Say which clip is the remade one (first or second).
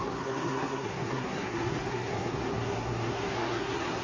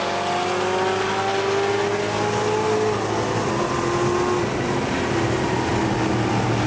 first